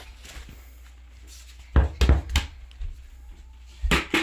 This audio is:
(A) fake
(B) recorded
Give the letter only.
B